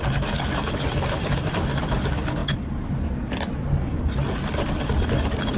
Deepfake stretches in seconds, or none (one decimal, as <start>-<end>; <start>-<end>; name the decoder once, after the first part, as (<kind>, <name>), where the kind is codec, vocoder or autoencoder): none